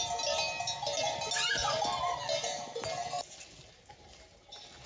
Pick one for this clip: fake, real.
real